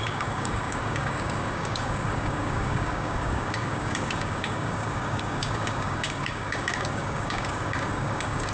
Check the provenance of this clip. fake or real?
fake